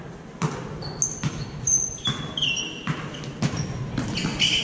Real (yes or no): yes